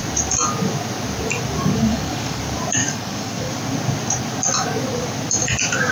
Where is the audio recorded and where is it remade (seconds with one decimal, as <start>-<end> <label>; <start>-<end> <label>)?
0.0-1.6 recorded; 1.6-2.4 remade; 2.4-2.8 recorded; 2.8-3.5 remade; 3.5-5.9 recorded